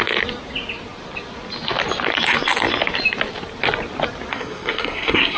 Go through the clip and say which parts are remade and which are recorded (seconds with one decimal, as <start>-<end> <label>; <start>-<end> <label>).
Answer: 0.0-4.3 recorded; 4.3-5.4 remade